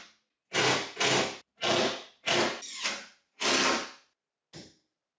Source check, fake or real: real